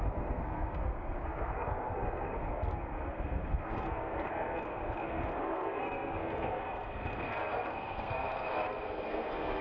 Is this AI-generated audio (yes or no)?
yes